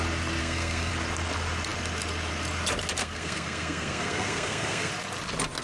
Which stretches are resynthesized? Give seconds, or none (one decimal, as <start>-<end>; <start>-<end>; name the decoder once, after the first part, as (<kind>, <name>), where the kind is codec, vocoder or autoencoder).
0.4-0.9 (codec, SNAC); 3.0-4.9